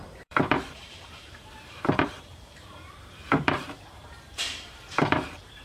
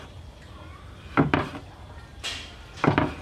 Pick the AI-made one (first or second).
first